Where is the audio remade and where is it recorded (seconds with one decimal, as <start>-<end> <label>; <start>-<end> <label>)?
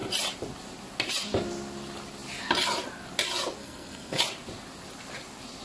0.0-3.6 recorded; 3.6-4.2 remade; 4.2-5.6 recorded